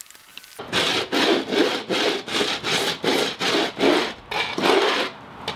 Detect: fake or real real